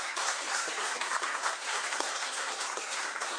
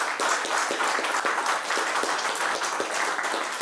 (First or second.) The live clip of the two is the second